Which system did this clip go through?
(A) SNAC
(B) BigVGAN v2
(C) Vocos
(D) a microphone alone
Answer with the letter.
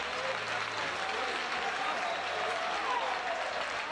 D